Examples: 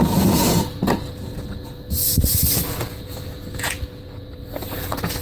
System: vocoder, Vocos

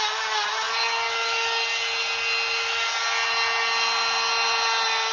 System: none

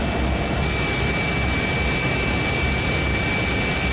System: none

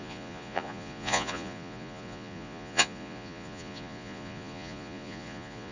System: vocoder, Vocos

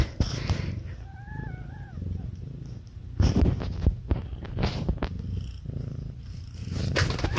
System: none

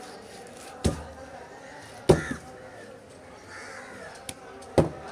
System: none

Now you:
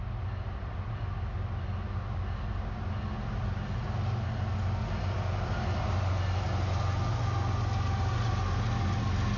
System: none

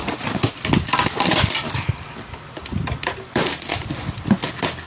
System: none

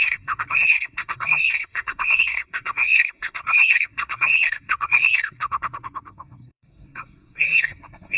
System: codec, SNAC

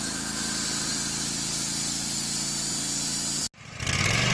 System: none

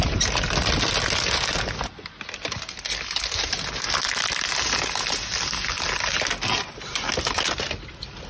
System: none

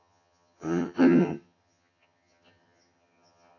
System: vocoder, HiFi-GAN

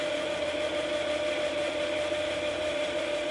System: vocoder, BigVGAN v2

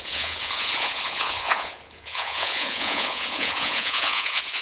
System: vocoder, Vocos